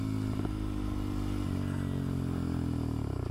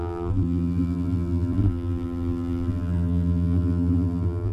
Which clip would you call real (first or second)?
first